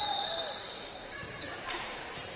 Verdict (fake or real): fake